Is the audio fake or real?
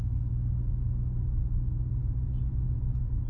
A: real